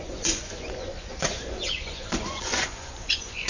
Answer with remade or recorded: remade